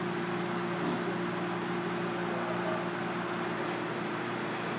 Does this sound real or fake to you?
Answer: real